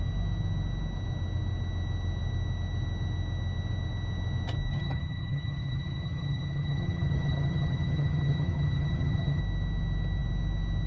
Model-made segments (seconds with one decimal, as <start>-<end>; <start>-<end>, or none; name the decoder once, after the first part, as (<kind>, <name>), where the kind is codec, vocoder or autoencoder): 4.7-9.4 (vocoder, HiFi-GAN)